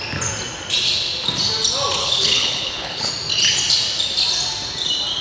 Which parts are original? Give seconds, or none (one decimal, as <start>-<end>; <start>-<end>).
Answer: 0.0-2.0; 3.1-5.2